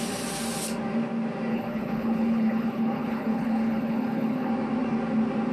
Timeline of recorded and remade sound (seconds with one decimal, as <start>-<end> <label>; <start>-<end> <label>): 0.0-1.5 recorded; 1.5-4.5 remade; 4.5-5.5 recorded